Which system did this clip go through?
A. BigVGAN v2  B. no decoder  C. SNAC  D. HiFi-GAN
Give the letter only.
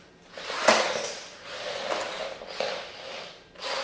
B